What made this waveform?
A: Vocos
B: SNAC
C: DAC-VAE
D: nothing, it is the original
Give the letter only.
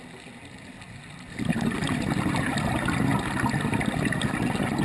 D